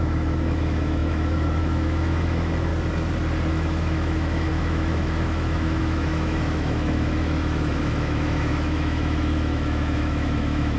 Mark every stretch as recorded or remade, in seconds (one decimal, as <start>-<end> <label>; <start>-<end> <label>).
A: 0.0-2.7 remade; 2.7-3.5 recorded; 3.5-10.8 remade